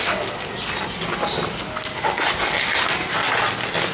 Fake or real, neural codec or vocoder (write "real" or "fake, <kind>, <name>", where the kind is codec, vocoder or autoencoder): real